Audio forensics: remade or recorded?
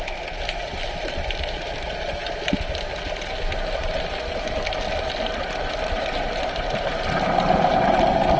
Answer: recorded